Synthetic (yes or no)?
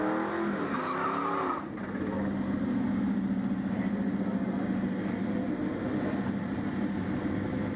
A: no